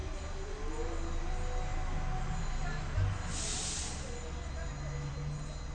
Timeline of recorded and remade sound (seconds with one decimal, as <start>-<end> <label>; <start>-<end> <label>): 0.0-5.7 recorded

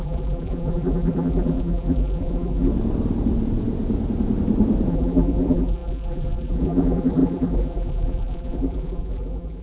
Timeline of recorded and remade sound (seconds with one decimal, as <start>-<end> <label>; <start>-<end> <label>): 0.0-2.7 remade; 2.7-4.9 recorded; 4.9-9.6 remade

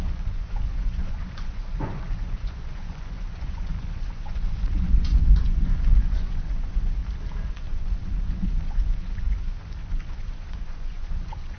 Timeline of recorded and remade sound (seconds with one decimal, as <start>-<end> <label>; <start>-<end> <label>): 0.0-7.0 remade; 7.0-7.5 recorded; 7.5-11.6 remade

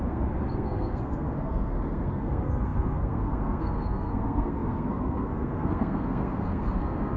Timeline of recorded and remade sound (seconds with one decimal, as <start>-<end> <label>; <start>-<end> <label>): 0.0-7.2 remade